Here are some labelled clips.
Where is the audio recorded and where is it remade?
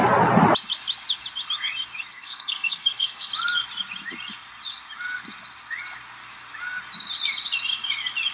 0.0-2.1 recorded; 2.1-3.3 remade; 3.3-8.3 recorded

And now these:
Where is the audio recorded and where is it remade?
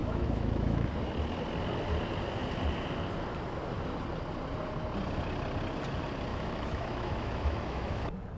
0.0-0.9 remade; 0.9-6.3 recorded; 6.3-8.0 remade; 8.0-8.4 recorded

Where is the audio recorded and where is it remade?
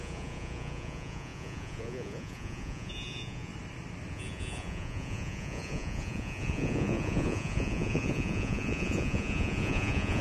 0.0-3.5 remade; 3.5-4.1 recorded; 4.1-10.2 remade